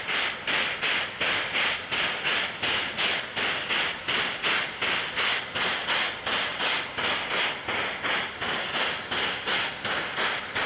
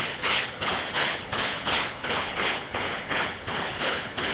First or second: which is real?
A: first